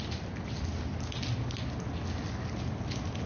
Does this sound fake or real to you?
real